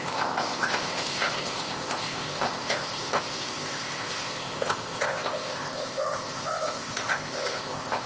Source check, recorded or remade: remade